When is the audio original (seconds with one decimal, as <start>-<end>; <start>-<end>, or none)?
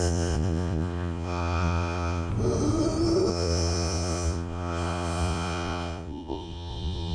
2.3-3.3